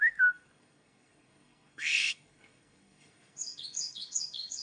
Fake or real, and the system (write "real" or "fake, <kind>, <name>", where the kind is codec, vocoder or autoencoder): fake, codec, SNAC